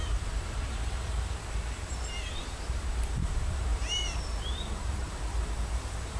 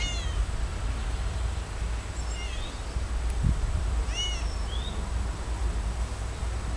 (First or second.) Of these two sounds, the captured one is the second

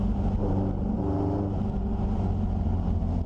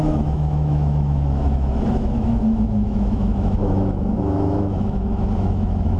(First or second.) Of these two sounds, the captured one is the first